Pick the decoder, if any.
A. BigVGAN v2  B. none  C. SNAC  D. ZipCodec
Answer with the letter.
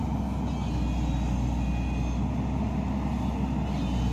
B